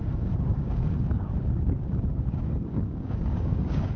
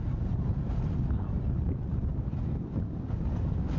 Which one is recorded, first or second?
second